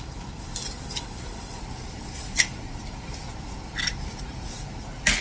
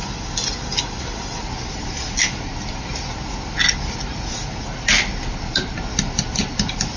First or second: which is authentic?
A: second